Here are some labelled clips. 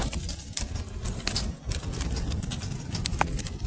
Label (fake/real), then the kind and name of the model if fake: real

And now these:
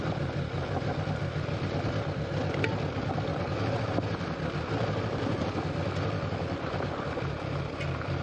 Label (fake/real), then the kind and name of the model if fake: real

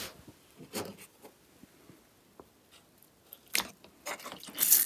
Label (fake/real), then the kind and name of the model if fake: real